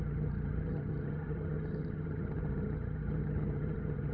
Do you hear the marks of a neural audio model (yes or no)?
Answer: yes